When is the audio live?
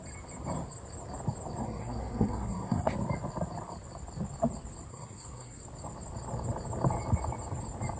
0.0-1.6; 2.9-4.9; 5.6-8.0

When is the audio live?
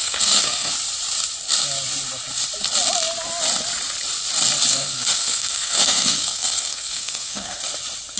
0.7-4.7; 7.6-8.2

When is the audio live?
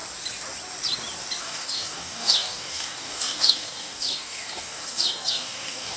0.0-1.4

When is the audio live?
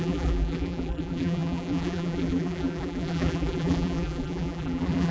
none